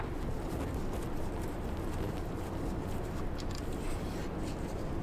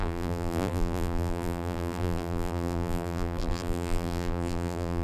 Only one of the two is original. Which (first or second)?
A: first